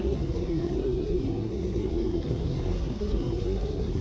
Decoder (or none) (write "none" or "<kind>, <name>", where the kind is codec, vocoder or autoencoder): codec, SNAC